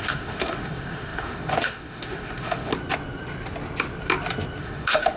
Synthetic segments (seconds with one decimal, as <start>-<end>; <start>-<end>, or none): 0.0-2.7; 4.6-5.2